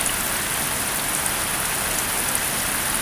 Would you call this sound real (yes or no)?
yes